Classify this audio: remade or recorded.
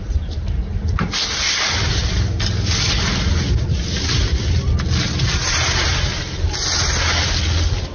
recorded